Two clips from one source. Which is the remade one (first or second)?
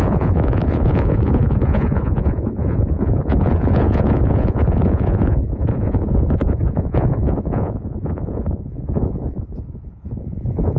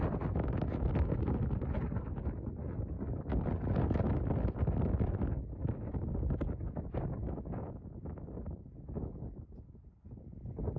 first